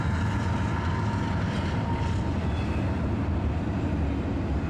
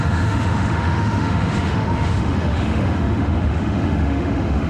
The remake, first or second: second